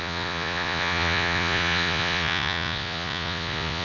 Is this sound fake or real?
fake